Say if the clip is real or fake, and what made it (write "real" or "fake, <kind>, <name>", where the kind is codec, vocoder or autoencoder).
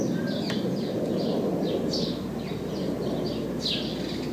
real